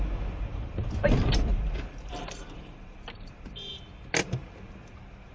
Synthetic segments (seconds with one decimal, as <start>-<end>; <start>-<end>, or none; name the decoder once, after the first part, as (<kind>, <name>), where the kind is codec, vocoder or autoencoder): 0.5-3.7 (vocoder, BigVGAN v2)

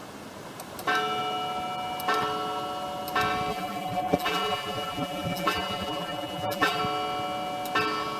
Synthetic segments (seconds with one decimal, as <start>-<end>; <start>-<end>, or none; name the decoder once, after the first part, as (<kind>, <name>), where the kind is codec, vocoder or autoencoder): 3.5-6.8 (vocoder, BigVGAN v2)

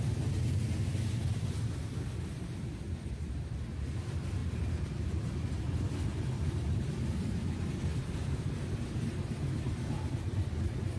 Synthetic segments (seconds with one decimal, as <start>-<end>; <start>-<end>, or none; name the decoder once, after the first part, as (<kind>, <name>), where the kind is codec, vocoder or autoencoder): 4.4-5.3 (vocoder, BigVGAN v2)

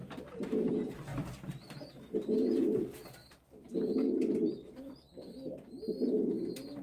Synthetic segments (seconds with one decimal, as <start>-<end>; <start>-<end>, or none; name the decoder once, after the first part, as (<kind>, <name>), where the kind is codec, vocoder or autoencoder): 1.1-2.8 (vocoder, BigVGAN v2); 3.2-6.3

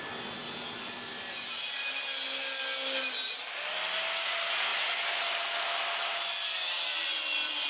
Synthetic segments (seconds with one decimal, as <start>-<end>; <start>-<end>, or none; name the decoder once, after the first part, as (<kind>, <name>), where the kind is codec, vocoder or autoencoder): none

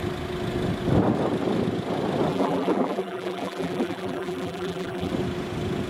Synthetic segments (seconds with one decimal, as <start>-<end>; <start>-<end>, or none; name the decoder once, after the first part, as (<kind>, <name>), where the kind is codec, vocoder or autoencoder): 2.3-5.1 (vocoder, BigVGAN v2)

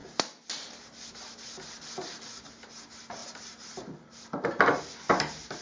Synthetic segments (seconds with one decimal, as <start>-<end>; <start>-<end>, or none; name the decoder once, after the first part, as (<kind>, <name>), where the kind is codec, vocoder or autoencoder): 3.2-4.8 (vocoder, BigVGAN v2)

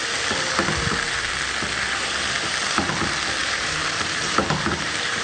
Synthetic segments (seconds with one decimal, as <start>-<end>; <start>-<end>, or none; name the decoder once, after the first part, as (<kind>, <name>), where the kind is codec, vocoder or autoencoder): 3.4-5.2 (vocoder, BigVGAN v2)